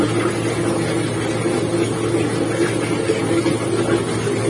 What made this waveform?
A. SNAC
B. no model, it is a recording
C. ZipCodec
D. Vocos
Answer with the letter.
B